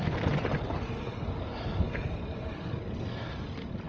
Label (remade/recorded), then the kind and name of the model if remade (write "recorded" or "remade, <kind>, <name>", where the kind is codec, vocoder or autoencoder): recorded